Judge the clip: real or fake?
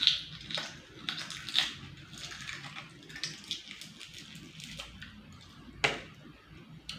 real